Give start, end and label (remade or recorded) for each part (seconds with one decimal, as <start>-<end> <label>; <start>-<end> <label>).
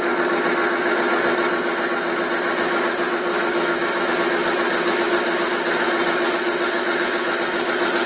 0.0-3.3 recorded; 3.3-4.1 remade; 4.1-8.1 recorded